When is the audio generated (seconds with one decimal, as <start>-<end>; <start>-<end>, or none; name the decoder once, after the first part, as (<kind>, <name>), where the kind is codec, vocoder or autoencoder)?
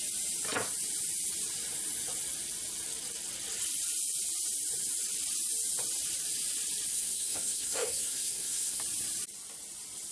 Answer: 6.9-8.8 (codec, SNAC)